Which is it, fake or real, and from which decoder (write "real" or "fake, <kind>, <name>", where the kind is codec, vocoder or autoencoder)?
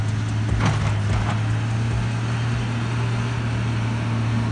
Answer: real